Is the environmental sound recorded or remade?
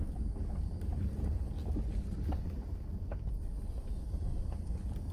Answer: recorded